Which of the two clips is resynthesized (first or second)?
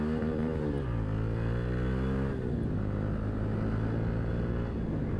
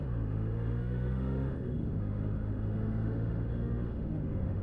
second